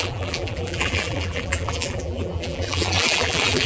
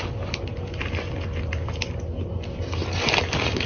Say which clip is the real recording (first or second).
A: second